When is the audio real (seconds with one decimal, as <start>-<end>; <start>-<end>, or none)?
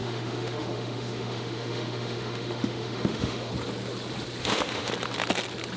3.5-4.4; 4.9-5.8